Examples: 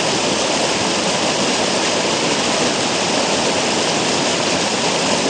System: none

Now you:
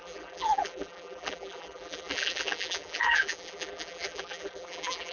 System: vocoder, BigVGAN v2